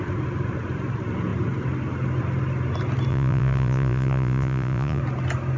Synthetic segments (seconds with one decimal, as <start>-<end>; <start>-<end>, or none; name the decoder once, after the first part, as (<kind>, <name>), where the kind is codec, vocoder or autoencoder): 3.1-5.0 (vocoder, Vocos)